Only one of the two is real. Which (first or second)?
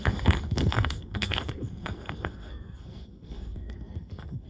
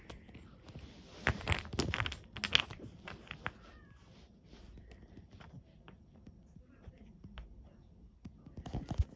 second